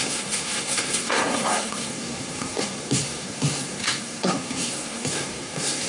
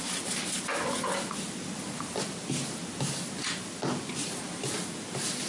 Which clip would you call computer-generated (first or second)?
first